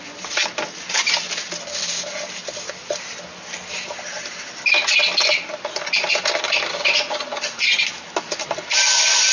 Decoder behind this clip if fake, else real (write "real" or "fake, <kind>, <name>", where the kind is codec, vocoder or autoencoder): real